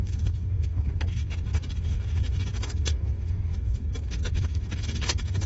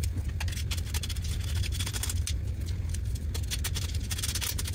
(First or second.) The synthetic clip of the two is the first